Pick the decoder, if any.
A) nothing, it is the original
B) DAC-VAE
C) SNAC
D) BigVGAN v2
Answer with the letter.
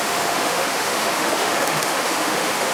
B